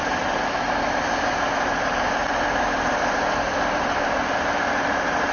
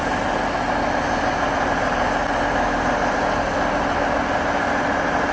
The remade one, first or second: first